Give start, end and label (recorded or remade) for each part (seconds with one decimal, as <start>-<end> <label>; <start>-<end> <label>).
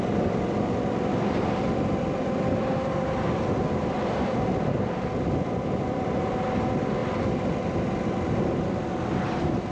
0.0-9.7 recorded